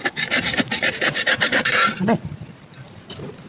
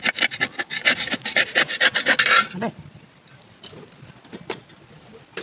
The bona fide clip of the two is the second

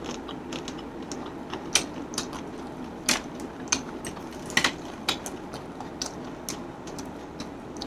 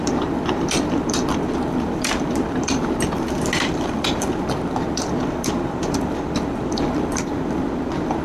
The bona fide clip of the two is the first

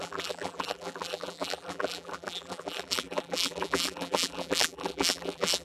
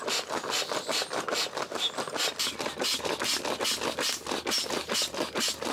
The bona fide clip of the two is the second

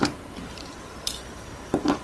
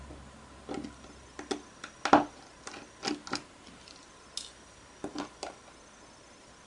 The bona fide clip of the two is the second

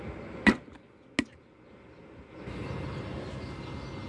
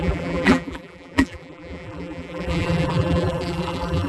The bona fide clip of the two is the first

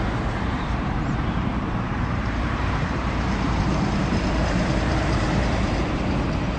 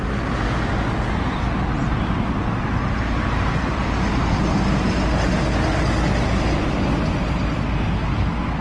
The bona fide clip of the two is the second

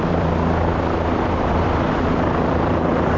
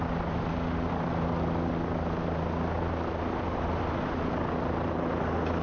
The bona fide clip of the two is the second